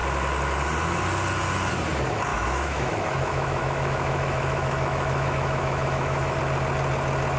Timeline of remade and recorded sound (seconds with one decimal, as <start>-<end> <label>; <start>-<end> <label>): 0.0-2.3 recorded; 2.3-6.4 remade; 6.4-7.4 recorded